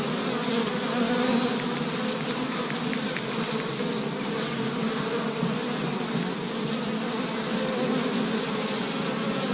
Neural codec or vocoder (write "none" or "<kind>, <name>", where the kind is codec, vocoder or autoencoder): none